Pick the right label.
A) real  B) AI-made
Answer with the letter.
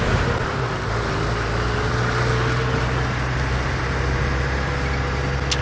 A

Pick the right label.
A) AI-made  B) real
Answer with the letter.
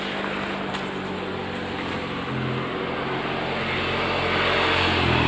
B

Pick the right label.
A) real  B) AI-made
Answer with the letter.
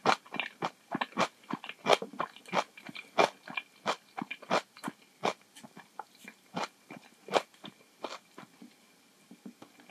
A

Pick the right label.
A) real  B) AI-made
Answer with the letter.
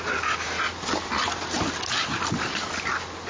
A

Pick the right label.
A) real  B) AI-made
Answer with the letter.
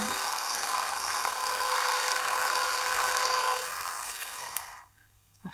B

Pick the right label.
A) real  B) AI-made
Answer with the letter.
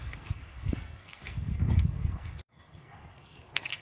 B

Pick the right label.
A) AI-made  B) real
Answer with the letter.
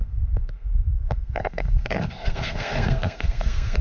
A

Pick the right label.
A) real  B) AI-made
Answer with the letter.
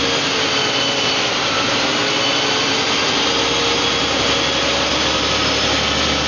A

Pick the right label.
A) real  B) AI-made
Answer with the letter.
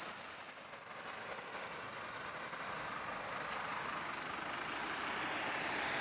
A